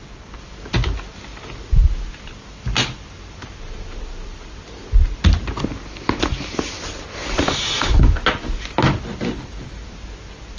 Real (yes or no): yes